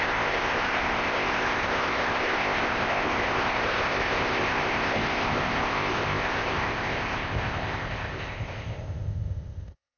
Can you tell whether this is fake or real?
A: fake